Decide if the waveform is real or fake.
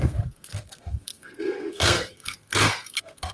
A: fake